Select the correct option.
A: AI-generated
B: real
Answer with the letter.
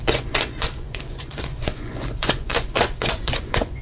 A